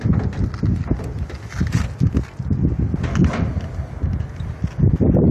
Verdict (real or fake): real